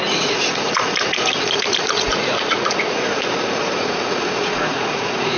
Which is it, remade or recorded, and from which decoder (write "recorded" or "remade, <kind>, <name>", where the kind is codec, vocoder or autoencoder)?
remade, vocoder, Vocos